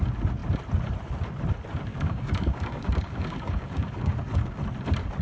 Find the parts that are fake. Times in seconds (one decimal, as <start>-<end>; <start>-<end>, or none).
1.9-4.6